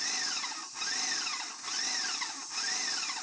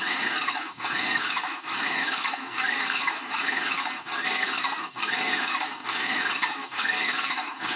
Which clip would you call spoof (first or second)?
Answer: second